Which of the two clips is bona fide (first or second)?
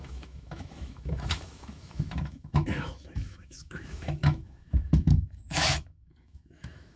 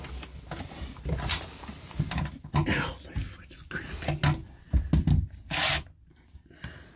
second